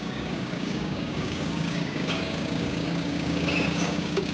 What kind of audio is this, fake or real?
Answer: fake